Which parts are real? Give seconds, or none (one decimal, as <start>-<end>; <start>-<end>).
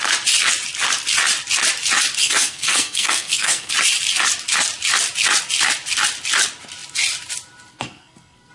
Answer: 0.0-2.2; 3.7-7.7